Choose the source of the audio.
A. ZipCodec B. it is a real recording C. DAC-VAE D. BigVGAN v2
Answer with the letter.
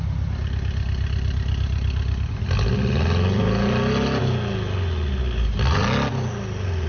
B